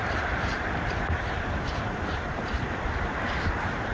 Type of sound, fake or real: fake